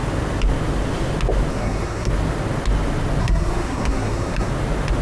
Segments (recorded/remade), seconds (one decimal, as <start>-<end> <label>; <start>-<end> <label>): 0.0-1.5 recorded; 1.5-2.1 remade; 2.1-3.2 recorded; 3.2-4.5 remade; 4.5-5.0 recorded